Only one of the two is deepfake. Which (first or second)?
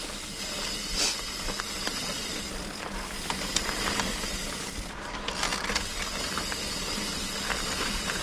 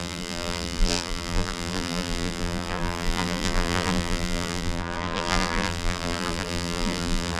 second